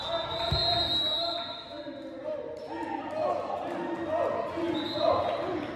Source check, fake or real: real